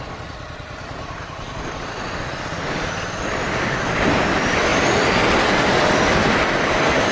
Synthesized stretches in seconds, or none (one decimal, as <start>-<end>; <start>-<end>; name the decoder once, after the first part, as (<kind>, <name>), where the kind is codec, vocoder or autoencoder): none